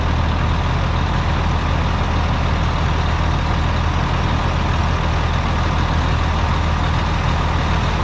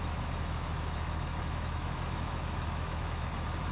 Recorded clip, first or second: first